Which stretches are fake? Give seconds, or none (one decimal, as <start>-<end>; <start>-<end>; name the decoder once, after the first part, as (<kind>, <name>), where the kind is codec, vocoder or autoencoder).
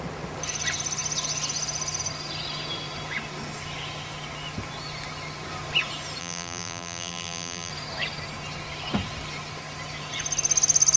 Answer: 6.2-7.7 (vocoder, BigVGAN v2)